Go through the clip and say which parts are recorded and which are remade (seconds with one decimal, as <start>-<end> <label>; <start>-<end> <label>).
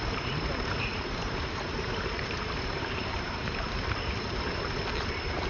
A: 0.0-0.9 recorded; 0.9-4.2 remade; 4.2-5.5 recorded